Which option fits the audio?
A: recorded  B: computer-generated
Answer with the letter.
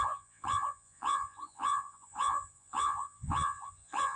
B